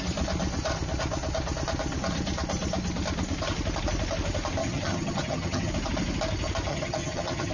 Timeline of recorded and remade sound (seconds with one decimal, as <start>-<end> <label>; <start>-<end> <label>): 0.0-4.6 recorded; 4.6-5.7 remade; 5.7-6.7 recorded; 6.7-7.5 remade